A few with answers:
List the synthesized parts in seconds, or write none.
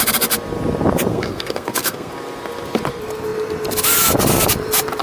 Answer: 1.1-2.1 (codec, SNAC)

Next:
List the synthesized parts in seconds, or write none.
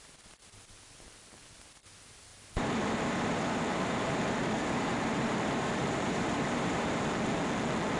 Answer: 2.3-7.1 (vocoder, BigVGAN v2)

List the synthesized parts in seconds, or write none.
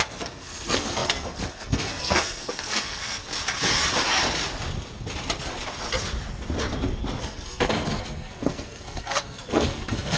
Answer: 0.0-3.2 (codec, SNAC); 7.2-10.2